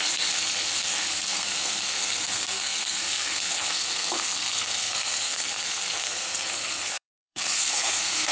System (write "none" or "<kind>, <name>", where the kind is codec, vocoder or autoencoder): codec, SNAC